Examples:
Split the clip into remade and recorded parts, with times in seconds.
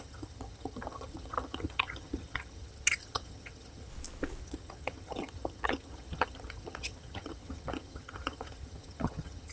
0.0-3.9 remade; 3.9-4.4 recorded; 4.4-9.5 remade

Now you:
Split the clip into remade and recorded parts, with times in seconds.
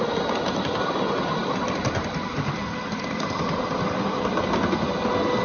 0.0-1.4 recorded; 1.4-4.1 remade; 4.1-5.4 recorded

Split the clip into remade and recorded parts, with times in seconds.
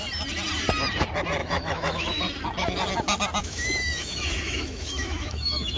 0.0-1.4 recorded; 1.4-2.2 remade; 2.2-3.4 recorded; 3.4-5.8 remade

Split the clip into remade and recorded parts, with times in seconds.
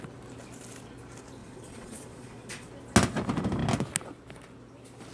0.0-1.4 recorded; 1.4-2.7 remade; 2.7-5.1 recorded